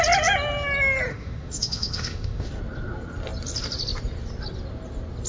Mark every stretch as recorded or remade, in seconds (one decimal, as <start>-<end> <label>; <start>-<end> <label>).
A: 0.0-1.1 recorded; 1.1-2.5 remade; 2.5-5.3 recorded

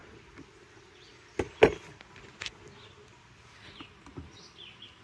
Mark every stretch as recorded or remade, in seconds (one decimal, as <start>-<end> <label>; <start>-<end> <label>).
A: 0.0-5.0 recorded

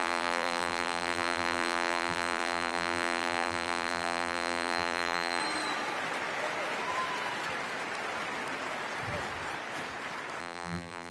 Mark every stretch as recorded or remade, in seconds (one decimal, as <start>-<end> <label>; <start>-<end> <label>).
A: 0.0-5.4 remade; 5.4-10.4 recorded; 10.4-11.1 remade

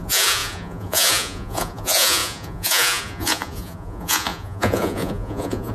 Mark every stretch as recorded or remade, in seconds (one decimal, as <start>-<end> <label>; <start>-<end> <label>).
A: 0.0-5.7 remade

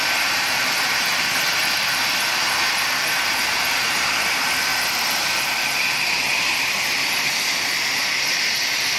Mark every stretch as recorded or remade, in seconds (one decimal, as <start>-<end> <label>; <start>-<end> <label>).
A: 0.0-1.1 remade; 1.1-3.4 recorded; 3.4-9.0 remade

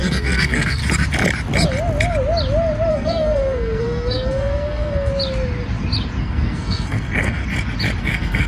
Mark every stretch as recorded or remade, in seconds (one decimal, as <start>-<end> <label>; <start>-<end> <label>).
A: 0.0-0.8 remade; 0.8-2.9 recorded; 2.9-5.1 remade; 5.1-6.2 recorded; 6.2-7.4 remade; 7.4-8.0 recorded; 8.0-8.5 remade

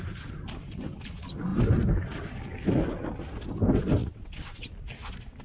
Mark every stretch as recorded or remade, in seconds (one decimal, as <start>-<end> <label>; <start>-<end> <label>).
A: 0.0-4.0 recorded; 4.0-4.7 remade; 4.7-5.4 recorded

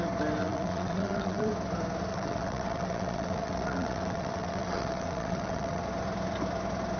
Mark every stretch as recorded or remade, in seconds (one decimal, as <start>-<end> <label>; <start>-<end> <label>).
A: 0.0-0.4 recorded; 0.4-1.5 remade; 1.5-2.1 recorded; 2.1-5.8 remade; 5.8-7.0 recorded